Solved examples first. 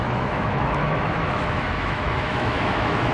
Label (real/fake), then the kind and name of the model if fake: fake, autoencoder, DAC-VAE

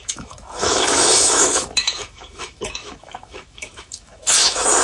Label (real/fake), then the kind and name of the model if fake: fake, autoencoder, DAC-VAE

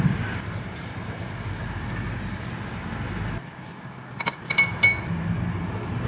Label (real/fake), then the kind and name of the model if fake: real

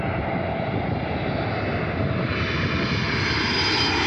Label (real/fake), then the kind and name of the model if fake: real